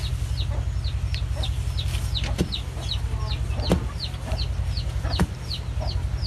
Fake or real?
real